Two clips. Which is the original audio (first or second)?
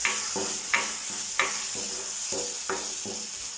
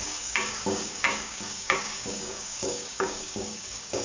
first